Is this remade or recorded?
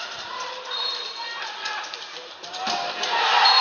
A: remade